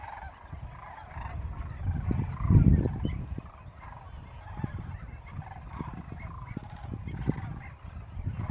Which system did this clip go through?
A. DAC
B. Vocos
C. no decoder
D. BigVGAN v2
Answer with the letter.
C